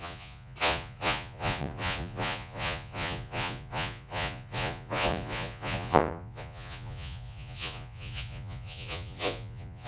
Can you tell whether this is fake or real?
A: fake